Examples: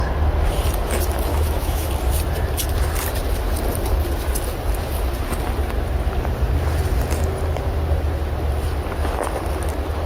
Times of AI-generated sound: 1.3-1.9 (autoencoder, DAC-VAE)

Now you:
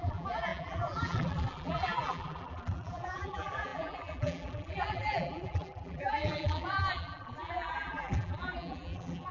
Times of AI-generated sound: 0.0-9.3 (vocoder, BigVGAN v2)

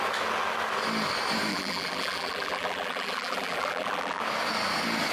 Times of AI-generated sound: 1.5-4.2 (vocoder, BigVGAN v2)

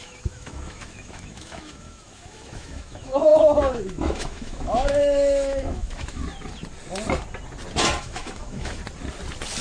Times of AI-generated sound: 0.0-6.2 (autoencoder, DAC-VAE); 8.0-8.8

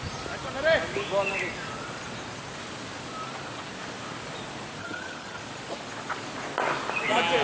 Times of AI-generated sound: 4.8-5.4 (vocoder, HiFi-GAN)